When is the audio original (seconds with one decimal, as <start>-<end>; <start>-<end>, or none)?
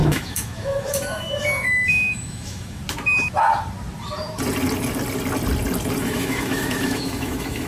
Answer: 2.8-6.0